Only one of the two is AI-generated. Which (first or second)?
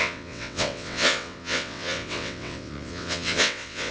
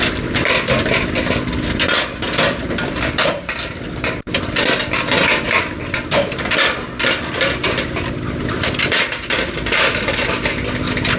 first